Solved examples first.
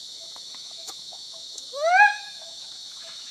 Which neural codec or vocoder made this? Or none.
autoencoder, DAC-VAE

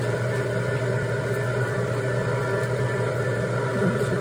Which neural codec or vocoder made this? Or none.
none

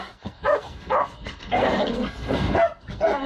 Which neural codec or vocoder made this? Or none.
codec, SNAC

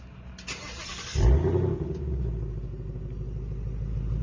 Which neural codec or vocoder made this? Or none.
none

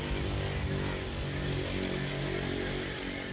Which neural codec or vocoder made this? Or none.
none